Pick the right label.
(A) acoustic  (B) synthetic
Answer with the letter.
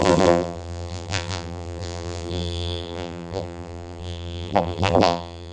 B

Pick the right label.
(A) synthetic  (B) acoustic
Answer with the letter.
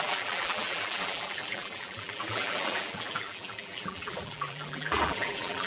A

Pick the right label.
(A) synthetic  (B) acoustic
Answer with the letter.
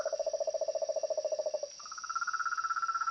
A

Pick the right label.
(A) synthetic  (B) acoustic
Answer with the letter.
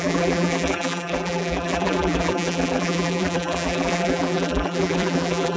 A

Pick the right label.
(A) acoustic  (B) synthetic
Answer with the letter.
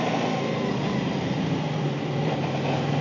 A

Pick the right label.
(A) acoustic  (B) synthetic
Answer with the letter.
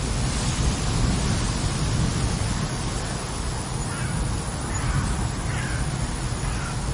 A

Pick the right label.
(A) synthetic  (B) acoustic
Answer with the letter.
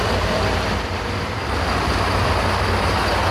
B